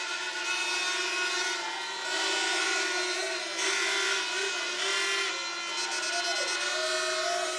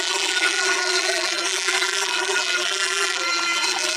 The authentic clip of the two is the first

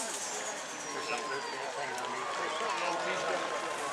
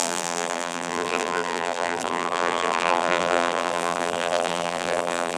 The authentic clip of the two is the first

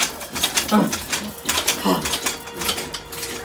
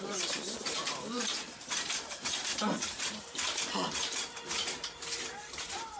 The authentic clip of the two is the first